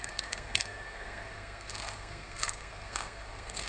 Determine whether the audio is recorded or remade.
remade